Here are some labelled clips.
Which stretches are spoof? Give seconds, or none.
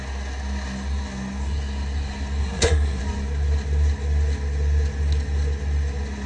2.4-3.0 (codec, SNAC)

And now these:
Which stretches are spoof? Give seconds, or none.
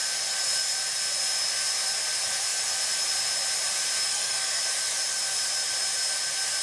4.1-4.6 (codec, SNAC)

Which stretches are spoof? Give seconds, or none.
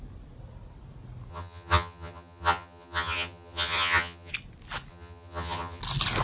1.3-4.3 (vocoder, HiFi-GAN); 4.9-5.8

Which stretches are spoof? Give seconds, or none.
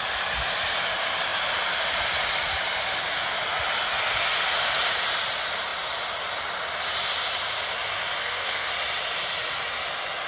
8.2-8.7 (codec, SNAC)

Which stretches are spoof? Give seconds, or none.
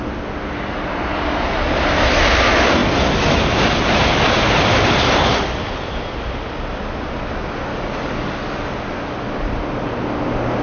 7.7-8.7 (codec, DAC)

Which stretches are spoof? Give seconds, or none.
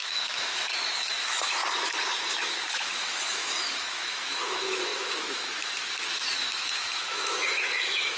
0.0-1.6 (autoencoder, DAC-VAE); 2.3-8.2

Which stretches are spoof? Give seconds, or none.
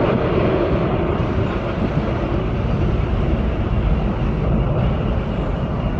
0.5-1.1 (vocoder, BigVGAN v2); 2.4-3.7